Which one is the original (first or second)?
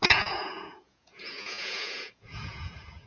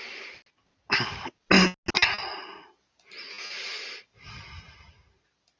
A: second